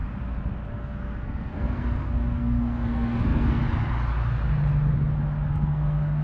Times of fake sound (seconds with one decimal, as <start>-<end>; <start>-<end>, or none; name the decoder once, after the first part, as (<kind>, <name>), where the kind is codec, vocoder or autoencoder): 0.7-3.6 (codec, SNAC); 5.5-6.2